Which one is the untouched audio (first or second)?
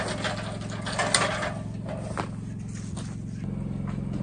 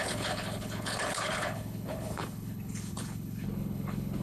first